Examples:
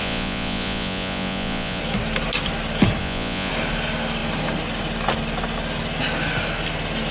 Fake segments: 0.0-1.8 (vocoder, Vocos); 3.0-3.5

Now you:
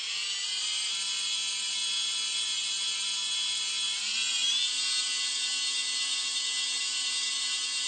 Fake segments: none

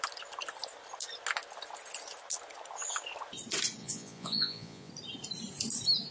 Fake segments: 3.8-4.9 (vocoder, Vocos)

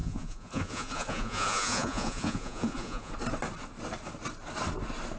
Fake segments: 0.0-3.1 (vocoder, Vocos)

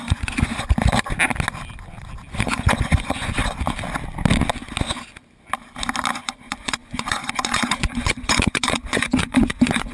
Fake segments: 0.0-0.5 (vocoder, Vocos); 2.3-3.4; 6.1-9.9

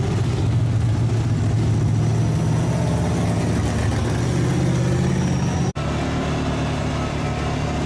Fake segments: none